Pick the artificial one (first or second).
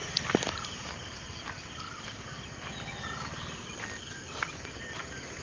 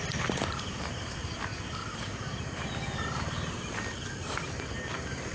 first